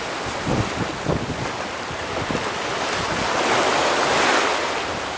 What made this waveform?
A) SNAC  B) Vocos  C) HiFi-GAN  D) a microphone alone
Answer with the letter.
D